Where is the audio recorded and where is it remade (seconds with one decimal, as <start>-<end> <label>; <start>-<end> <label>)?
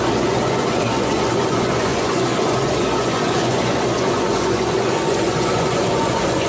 0.0-6.5 remade